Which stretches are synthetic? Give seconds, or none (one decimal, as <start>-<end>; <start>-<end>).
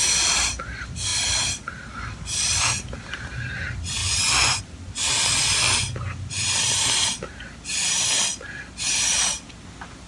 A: 4.0-4.6